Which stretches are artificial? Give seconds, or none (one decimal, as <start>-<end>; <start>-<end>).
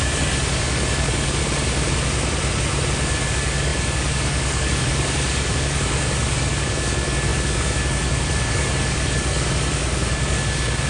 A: 0.0-1.4; 3.2-10.9